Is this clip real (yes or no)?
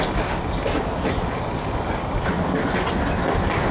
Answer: yes